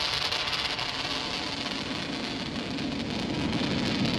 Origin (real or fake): real